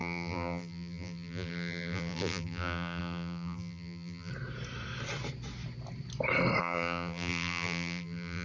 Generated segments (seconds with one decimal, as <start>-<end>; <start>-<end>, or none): 0.0-4.3; 6.6-8.4